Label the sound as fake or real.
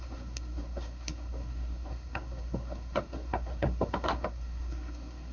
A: fake